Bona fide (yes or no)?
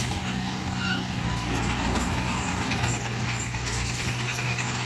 no